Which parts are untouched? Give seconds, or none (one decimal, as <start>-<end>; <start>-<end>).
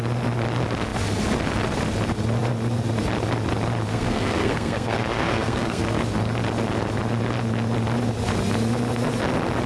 0.0-3.9; 6.0-9.7